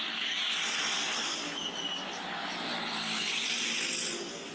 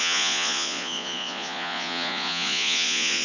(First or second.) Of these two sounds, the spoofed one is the second